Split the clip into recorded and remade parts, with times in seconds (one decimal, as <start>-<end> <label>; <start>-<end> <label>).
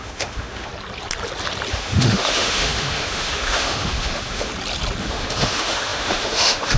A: 0.0-0.7 remade; 0.7-1.7 recorded; 1.7-4.5 remade; 4.5-5.0 recorded; 5.0-6.8 remade